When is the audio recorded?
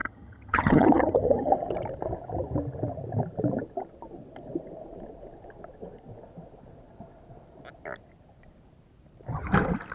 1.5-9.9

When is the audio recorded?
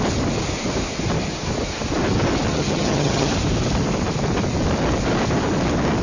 0.0-2.5; 3.3-6.0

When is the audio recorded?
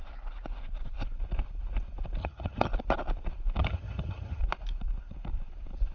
0.0-2.2; 2.7-3.6; 4.4-5.9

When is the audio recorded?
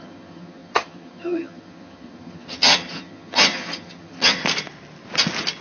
4.4-5.6